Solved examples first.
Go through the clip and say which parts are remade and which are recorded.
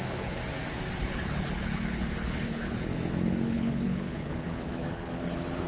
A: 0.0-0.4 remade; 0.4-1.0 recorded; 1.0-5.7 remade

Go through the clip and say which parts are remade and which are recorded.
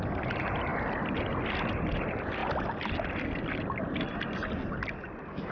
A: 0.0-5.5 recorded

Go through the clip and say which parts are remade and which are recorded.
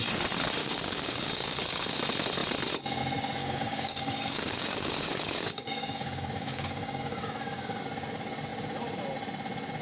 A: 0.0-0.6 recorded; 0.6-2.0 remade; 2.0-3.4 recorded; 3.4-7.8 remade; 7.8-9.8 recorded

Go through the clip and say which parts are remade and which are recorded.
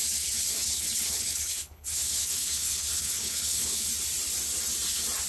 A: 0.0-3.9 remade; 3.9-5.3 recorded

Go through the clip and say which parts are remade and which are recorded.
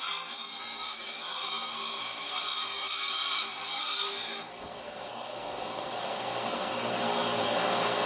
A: 0.0-8.1 remade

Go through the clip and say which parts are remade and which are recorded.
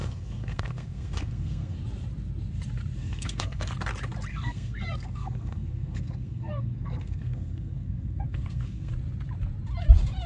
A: 0.0-1.8 remade; 1.8-3.0 recorded; 3.0-3.7 remade; 3.7-4.3 recorded; 4.3-8.9 remade; 8.9-10.3 recorded